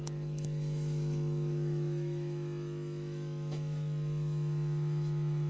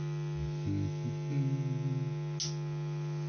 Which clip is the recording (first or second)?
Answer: second